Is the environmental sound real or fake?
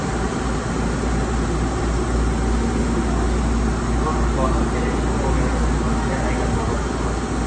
real